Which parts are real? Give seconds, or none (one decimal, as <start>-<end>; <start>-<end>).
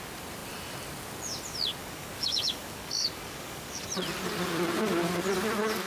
0.0-1.8; 3.9-5.9